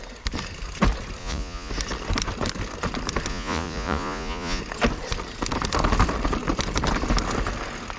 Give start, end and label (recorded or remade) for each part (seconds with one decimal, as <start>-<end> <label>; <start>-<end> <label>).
0.0-1.2 recorded; 1.2-1.7 remade; 1.7-3.3 recorded; 3.3-4.6 remade; 4.6-8.0 recorded